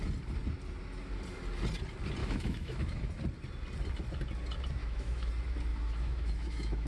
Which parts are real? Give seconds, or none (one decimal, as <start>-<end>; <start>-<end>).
0.0-2.2; 3.1-4.8; 5.3-5.7